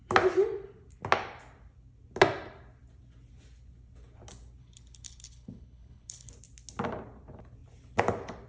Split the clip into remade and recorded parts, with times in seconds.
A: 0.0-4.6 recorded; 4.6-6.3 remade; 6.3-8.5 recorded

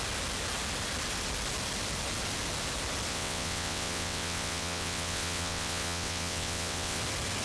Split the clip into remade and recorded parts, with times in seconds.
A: 0.0-3.1 recorded; 3.1-7.0 remade; 7.0-7.4 recorded

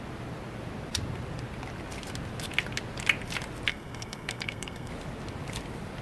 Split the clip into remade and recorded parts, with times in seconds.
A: 0.0-3.7 recorded; 3.7-4.9 remade; 4.9-6.0 recorded

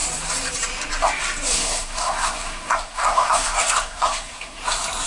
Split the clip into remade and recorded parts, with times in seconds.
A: 0.0-1.5 recorded; 1.5-4.6 remade; 4.6-5.1 recorded